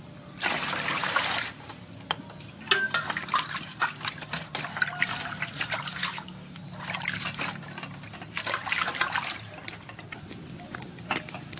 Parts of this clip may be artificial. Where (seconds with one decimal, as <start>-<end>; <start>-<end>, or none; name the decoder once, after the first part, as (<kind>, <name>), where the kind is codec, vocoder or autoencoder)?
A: 6.0-6.6 (autoencoder, DAC-VAE)